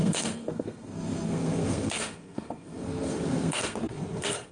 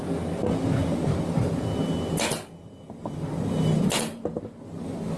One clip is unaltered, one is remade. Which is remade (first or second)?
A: first